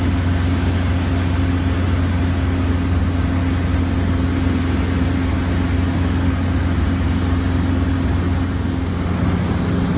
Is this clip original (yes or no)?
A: yes